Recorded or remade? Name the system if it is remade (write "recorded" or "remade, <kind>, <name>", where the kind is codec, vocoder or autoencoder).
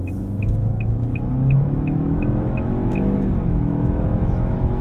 remade, autoencoder, DAC-VAE